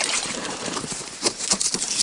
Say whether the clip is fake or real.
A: fake